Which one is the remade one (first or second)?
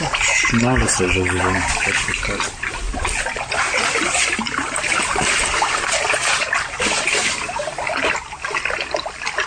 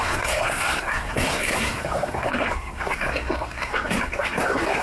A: second